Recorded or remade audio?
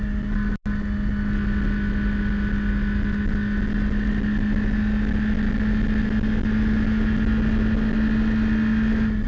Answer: recorded